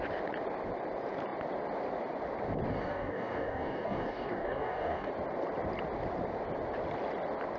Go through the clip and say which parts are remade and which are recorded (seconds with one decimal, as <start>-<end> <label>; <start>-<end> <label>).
0.0-2.7 recorded; 2.7-5.1 remade; 5.1-7.6 recorded